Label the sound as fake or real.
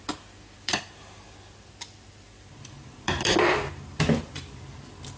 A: fake